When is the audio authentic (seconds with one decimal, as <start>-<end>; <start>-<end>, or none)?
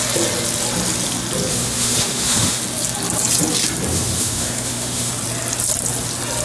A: 0.0-1.5; 2.6-3.9; 5.1-6.4